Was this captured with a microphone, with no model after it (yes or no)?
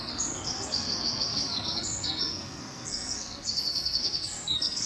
no